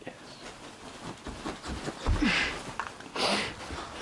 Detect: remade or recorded recorded